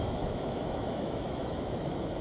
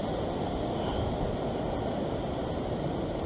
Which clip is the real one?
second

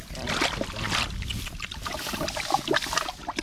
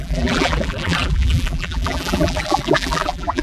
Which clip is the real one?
first